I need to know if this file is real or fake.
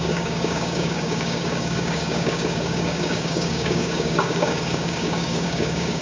fake